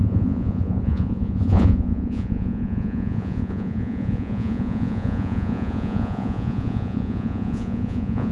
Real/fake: fake